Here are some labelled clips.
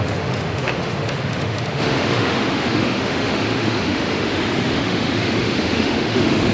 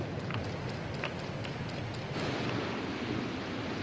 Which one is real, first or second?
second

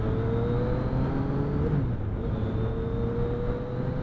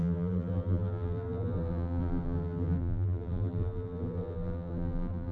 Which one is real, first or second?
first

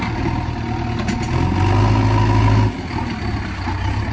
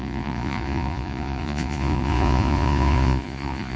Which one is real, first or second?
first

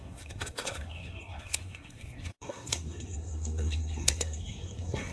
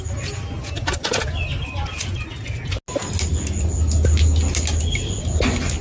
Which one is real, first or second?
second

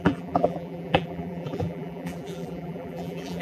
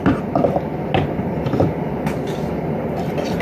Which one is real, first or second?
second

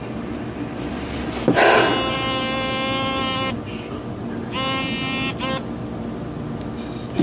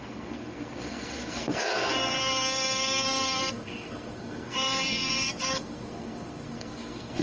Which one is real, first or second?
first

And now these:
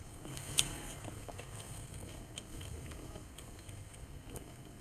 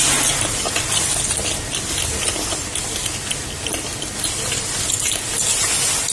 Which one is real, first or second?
second